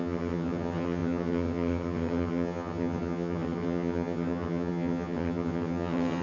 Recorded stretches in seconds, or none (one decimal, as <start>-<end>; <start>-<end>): none